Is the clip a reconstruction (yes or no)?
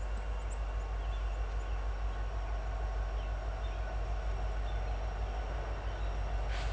no